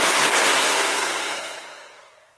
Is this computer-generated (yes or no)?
yes